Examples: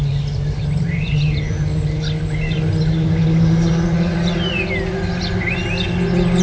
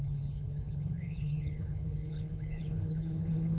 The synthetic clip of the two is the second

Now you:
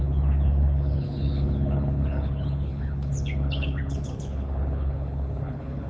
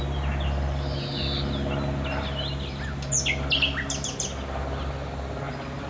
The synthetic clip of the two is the first